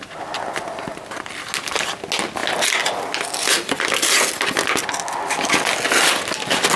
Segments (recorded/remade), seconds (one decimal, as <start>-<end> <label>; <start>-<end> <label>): 0.0-6.8 recorded